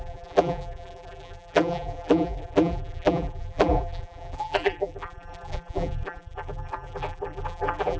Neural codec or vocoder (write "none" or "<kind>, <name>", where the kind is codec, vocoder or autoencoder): vocoder, BigVGAN v2